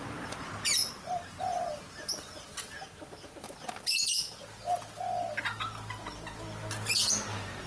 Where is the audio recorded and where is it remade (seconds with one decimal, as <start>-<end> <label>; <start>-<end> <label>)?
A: 0.0-2.5 remade; 2.5-7.1 recorded; 7.1-7.7 remade